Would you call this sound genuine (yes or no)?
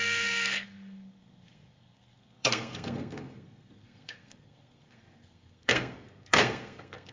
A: no